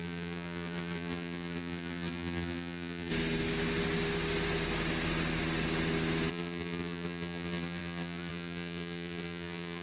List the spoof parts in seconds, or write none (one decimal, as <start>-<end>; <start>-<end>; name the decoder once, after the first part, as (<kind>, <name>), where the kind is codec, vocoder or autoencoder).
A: 0.0-3.1 (vocoder, BigVGAN v2); 6.3-9.8